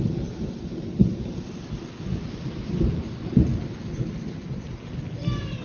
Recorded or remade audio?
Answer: recorded